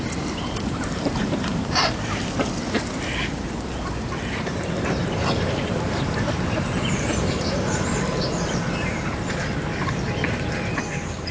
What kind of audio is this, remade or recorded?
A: remade